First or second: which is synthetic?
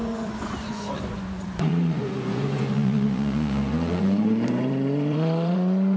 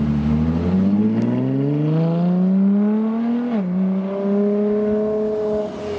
first